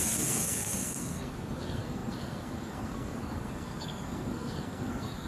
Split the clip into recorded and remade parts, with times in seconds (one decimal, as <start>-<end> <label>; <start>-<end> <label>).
0.0-5.3 remade